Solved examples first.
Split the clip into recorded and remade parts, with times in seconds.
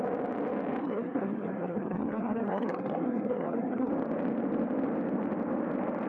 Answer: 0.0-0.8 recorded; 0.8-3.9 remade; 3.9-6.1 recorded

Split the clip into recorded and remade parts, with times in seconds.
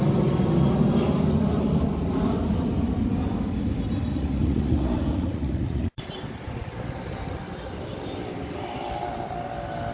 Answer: 0.0-4.1 recorded; 4.1-6.1 remade; 6.1-9.9 recorded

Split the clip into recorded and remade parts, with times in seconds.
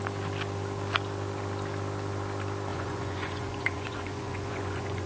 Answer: 0.0-2.7 recorded; 2.7-5.1 remade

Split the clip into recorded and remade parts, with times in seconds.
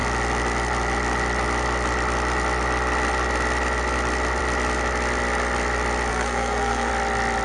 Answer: 0.0-6.1 recorded; 6.1-6.9 remade; 6.9-7.4 recorded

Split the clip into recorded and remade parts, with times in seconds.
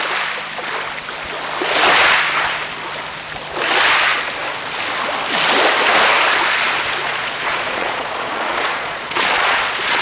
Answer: 0.0-7.0 recorded; 7.0-10.0 remade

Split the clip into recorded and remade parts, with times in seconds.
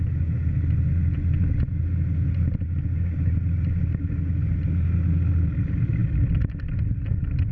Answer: 0.0-7.5 recorded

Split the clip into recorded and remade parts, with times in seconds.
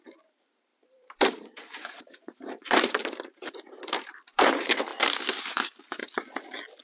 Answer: 0.0-4.9 remade; 4.9-5.4 recorded; 5.4-6.0 remade; 6.0-6.8 recorded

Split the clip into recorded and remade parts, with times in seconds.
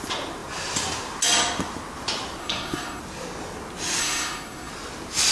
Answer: 0.0-2.4 recorded; 2.4-3.0 remade; 3.0-4.0 recorded; 4.0-4.7 remade; 4.7-5.3 recorded